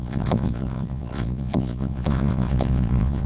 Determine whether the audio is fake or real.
fake